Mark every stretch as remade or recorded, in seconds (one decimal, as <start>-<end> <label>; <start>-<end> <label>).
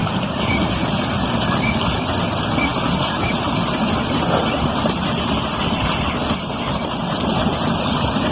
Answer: 0.0-2.7 recorded; 2.7-5.9 remade; 5.9-8.3 recorded